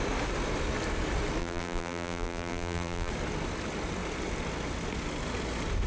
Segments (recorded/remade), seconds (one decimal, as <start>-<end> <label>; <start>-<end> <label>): 0.0-1.4 recorded; 1.4-3.1 remade; 3.1-5.9 recorded